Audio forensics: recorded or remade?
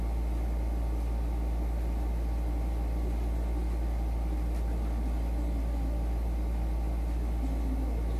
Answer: recorded